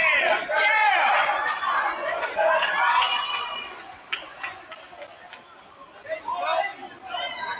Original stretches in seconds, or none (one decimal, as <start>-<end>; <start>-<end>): 4.6-7.6

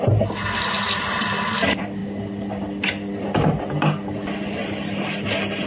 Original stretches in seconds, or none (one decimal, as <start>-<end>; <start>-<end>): 0.0-5.7

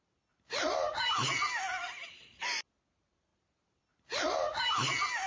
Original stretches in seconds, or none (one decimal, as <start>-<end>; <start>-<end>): 0.0-5.3

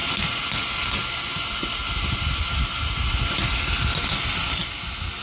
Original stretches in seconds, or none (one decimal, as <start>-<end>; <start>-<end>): 0.0-5.2

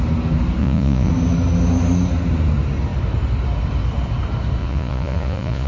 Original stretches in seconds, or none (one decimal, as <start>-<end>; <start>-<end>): 0.0-0.6; 1.1-4.6

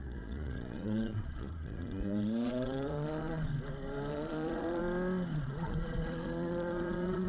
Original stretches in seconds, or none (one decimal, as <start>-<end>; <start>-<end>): 3.5-4.1; 4.8-5.4